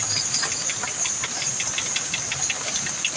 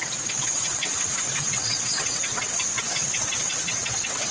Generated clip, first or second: second